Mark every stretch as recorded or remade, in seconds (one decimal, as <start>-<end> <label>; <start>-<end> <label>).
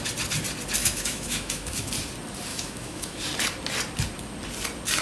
0.0-0.8 recorded; 0.8-1.9 remade; 1.9-2.5 recorded; 2.5-3.2 remade; 3.2-5.0 recorded